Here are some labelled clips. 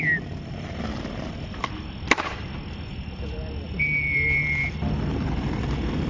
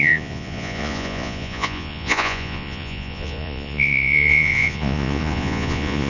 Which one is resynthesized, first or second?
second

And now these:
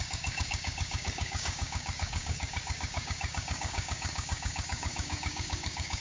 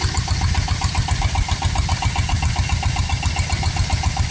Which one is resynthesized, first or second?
first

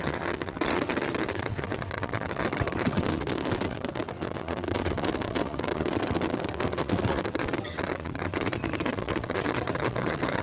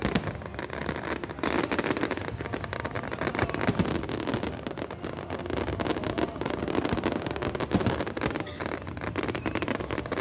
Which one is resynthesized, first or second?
first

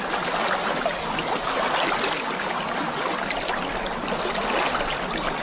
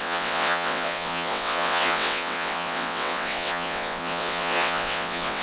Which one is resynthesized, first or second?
second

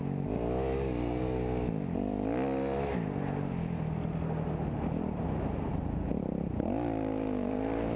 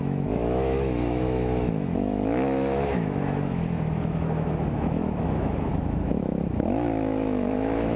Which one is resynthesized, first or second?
second